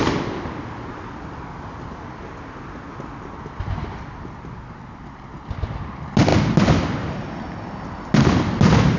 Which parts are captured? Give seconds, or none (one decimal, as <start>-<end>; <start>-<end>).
0.0-9.0